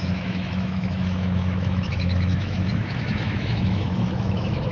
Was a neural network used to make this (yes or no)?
yes